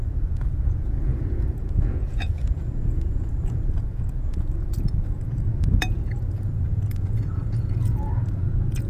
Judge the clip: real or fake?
fake